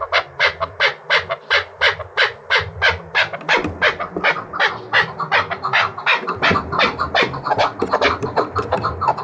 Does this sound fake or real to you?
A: real